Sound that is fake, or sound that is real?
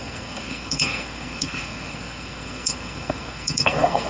fake